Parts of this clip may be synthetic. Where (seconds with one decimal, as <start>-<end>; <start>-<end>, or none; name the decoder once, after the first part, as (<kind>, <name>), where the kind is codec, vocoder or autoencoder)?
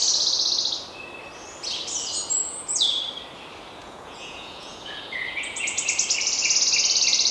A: 2.4-3.0 (vocoder, Vocos); 3.8-5.8